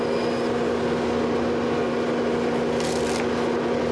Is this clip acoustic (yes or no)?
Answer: yes